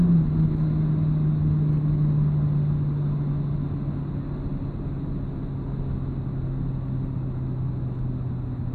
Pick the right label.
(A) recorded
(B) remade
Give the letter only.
A